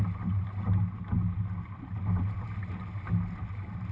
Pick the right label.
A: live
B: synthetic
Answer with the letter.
A